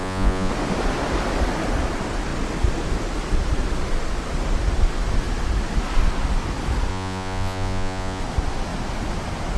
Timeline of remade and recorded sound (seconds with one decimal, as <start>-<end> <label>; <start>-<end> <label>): 0.0-0.5 remade; 0.5-6.9 recorded; 6.9-8.2 remade; 8.2-9.6 recorded